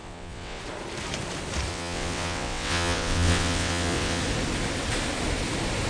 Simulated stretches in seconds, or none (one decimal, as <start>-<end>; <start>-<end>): 0.0-0.6; 1.7-4.2